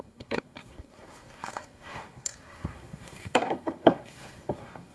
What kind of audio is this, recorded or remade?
remade